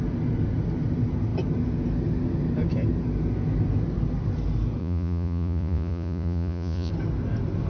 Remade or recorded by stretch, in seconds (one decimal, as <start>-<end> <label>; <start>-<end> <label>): 0.0-4.8 recorded; 4.8-6.9 remade; 6.9-7.7 recorded